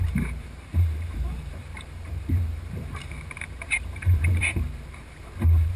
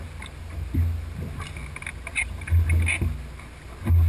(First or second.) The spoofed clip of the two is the first